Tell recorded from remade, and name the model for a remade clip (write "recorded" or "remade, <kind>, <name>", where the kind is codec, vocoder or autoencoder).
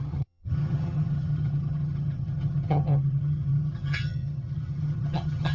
remade, vocoder, HiFi-GAN